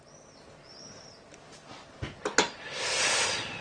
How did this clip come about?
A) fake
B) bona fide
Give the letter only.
B